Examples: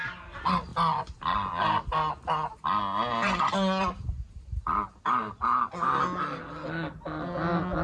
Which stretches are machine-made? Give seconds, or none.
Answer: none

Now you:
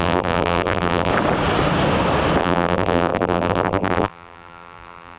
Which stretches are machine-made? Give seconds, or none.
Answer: 0.0-1.1 (vocoder, BigVGAN v2); 2.4-5.2

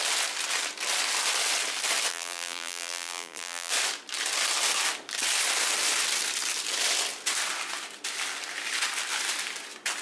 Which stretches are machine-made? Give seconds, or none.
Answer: 2.1-3.7 (vocoder, BigVGAN v2)

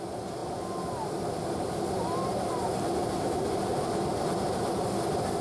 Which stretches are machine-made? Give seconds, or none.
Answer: none

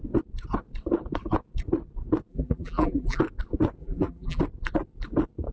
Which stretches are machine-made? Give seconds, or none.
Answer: 2.3-3.2 (vocoder, BigVGAN v2); 3.8-4.4

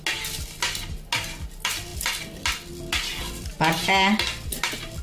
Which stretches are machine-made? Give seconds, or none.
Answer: none

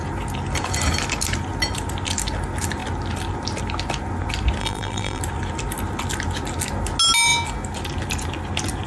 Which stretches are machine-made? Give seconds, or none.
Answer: 4.6-5.2 (vocoder, BigVGAN v2)

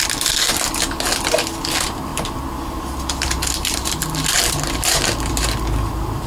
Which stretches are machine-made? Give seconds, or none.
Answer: none